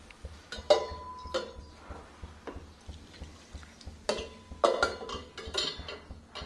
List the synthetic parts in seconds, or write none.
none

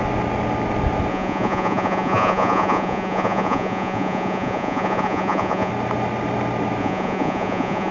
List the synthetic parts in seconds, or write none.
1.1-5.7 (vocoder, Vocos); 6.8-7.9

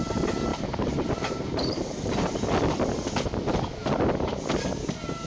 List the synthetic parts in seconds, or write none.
0.5-2.4 (vocoder, BigVGAN v2)

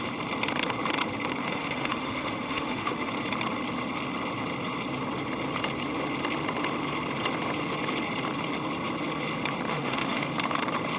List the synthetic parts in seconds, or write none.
1.4-3.1 (autoencoder, DAC-VAE); 9.7-10.3

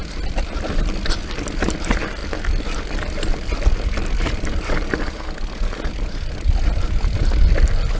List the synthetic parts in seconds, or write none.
none

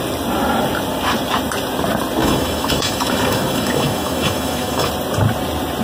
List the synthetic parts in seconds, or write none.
2.2-4.9 (autoencoder, DAC-VAE)

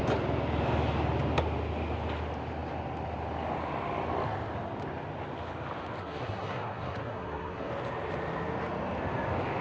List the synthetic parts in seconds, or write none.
6.0-7.7 (codec, SNAC)